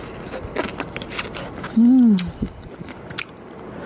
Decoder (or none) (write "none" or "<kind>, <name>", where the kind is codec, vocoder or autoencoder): none